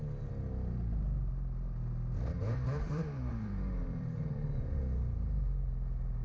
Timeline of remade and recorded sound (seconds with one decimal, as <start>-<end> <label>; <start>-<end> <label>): 0.0-2.4 recorded; 2.4-4.8 remade; 4.8-6.2 recorded